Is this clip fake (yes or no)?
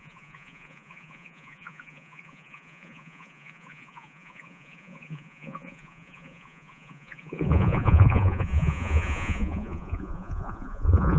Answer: yes